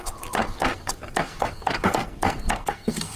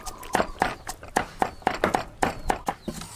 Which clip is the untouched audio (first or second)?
second